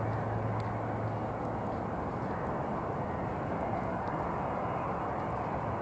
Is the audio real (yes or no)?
yes